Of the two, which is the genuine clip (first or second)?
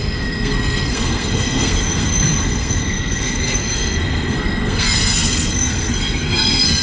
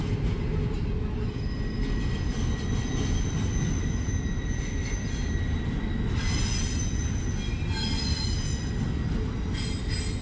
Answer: second